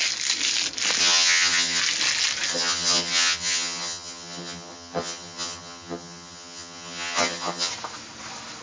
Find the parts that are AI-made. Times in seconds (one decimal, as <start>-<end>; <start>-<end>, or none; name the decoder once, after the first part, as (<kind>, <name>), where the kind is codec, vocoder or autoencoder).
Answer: 1.0-1.8 (vocoder, HiFi-GAN); 2.5-7.7